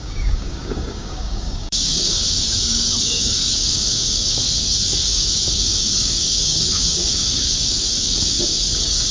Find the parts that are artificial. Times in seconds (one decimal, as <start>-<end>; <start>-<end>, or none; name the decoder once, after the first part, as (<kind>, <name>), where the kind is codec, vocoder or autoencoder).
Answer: 0.0-9.1 (codec, DAC)